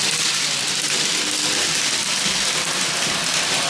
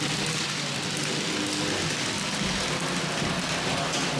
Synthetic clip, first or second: first